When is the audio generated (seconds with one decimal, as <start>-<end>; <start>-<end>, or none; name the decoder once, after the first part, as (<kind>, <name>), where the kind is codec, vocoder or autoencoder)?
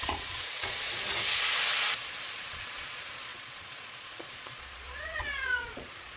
0.0-0.9 (vocoder, Vocos); 2.3-6.2